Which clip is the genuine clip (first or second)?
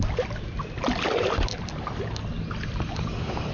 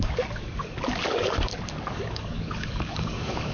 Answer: first